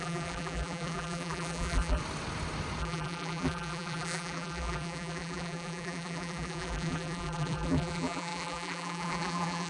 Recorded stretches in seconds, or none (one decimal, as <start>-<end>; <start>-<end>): 2.0-2.8